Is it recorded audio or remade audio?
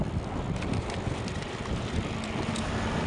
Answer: recorded